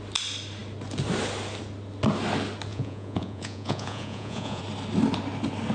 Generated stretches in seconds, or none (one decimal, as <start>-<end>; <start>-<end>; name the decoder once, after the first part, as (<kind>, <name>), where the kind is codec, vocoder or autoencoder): 2.7-4.6 (vocoder, Vocos)